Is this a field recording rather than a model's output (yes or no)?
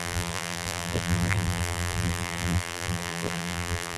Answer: no